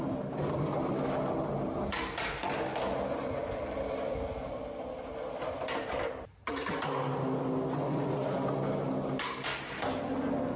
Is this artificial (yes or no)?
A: no